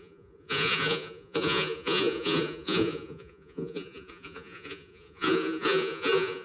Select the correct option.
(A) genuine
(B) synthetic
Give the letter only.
B